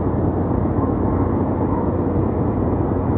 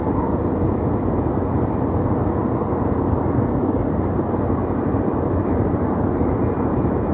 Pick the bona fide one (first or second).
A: first